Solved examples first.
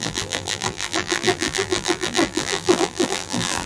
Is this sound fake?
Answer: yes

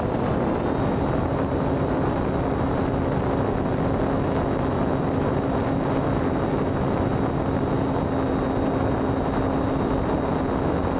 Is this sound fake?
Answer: no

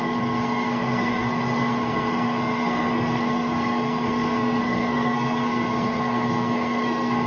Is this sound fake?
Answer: yes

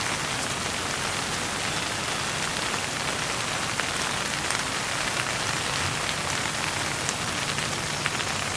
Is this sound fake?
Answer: no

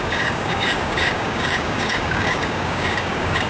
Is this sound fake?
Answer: yes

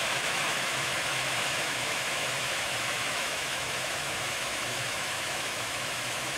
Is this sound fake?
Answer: yes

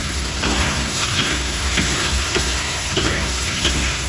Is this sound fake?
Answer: yes